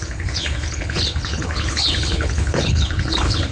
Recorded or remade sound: remade